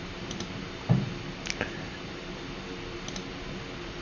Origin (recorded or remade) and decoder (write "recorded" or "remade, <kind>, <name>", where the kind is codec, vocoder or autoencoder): recorded